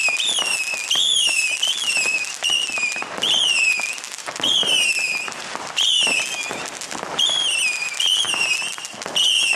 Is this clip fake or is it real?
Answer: real